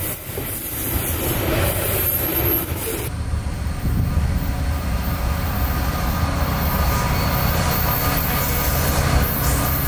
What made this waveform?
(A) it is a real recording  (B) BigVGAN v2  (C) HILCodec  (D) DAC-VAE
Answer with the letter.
A